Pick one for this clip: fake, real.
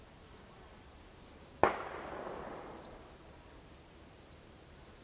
real